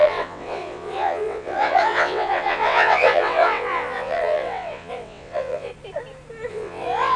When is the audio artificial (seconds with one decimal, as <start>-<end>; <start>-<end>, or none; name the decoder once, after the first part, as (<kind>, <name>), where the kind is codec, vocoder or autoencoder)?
0.0-5.7 (vocoder, WaveNeXt); 6.5-7.2